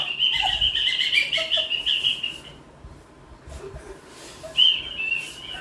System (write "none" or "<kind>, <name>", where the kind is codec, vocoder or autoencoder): none